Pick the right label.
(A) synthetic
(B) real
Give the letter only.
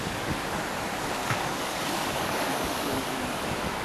A